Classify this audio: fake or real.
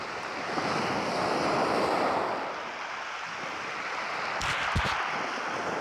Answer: real